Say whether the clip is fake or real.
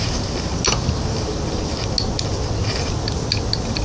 real